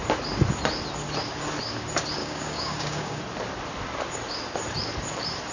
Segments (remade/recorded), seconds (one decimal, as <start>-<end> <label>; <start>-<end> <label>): 0.0-2.2 recorded; 2.2-3.2 remade; 3.2-5.5 recorded